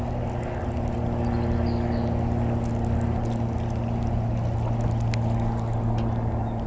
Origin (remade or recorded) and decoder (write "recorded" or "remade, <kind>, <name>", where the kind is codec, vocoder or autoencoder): recorded